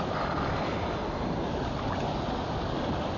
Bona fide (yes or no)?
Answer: yes